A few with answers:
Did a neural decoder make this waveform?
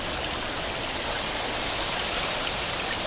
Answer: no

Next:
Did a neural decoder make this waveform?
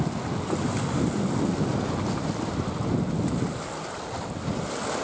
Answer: no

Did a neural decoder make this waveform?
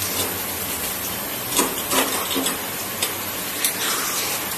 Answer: yes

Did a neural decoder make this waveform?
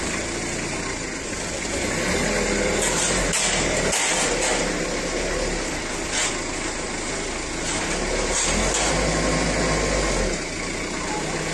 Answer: no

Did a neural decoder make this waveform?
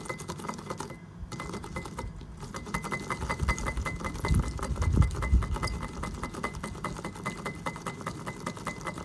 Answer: no